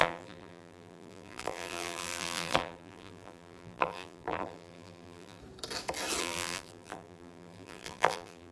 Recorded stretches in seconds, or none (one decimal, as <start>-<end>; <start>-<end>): 5.4-6.2